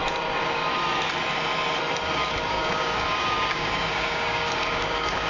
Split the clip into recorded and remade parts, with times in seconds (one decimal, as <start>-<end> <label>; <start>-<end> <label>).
0.0-2.5 recorded; 2.5-5.3 remade